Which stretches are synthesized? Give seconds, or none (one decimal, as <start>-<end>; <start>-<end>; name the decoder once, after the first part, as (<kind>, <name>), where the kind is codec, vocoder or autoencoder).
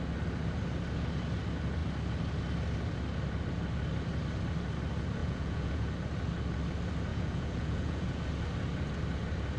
5.2-5.9 (vocoder, Vocos); 7.1-8.2